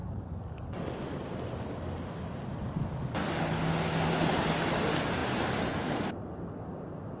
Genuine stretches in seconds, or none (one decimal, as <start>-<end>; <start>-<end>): 1.0-3.2; 3.7-7.2